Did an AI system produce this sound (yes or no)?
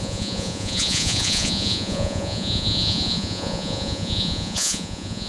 yes